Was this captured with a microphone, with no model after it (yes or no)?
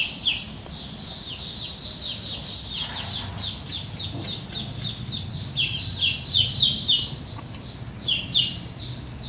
yes